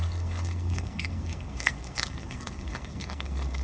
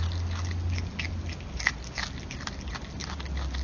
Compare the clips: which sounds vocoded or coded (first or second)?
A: first